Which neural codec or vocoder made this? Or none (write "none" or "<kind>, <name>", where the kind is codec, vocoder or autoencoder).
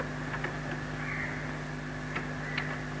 none